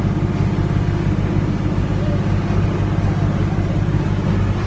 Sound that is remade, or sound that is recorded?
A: recorded